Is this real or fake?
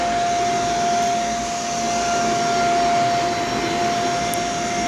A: real